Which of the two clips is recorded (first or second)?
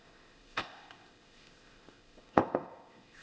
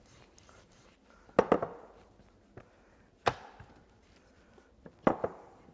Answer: second